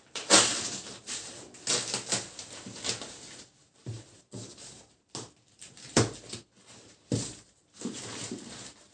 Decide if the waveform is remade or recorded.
recorded